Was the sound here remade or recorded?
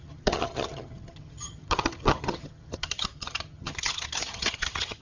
remade